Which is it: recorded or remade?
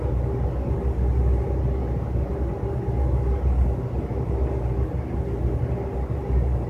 recorded